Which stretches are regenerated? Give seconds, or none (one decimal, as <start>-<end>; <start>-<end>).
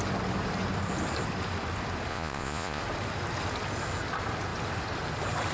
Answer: 2.1-2.8